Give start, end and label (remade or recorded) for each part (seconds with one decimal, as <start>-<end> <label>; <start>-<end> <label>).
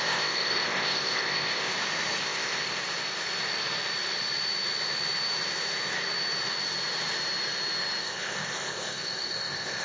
0.0-1.7 remade; 1.7-2.2 recorded; 2.2-2.8 remade; 2.8-8.0 recorded; 8.0-9.8 remade